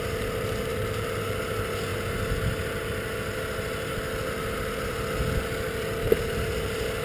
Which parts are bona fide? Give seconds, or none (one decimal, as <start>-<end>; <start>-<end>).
0.0-0.7; 1.4-7.0